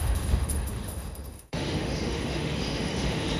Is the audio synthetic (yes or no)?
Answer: yes